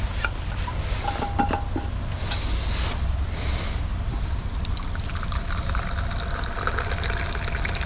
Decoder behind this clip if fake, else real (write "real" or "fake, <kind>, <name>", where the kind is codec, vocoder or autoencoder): real